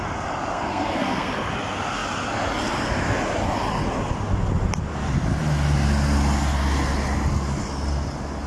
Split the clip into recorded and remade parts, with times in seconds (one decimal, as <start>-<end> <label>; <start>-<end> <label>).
0.0-0.5 recorded; 0.5-1.3 remade; 1.3-8.5 recorded